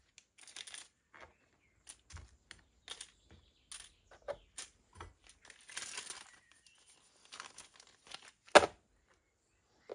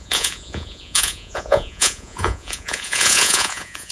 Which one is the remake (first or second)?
second